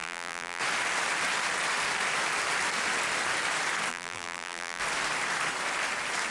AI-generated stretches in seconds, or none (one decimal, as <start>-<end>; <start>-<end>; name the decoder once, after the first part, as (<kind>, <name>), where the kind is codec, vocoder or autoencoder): 0.0-0.6 (vocoder, BigVGAN v2); 3.9-4.8